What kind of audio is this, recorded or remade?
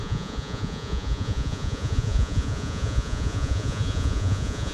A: remade